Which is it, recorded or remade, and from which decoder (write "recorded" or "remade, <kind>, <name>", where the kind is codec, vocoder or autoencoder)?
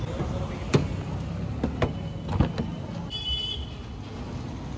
recorded